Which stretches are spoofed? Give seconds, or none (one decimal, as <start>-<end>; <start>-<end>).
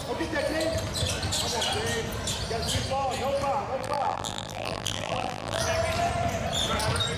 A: 3.8-5.6